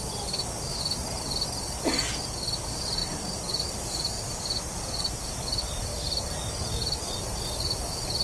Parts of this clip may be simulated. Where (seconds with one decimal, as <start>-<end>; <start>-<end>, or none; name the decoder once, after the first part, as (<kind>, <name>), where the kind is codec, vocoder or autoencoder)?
3.0-4.3 (vocoder, BigVGAN v2); 5.9-7.2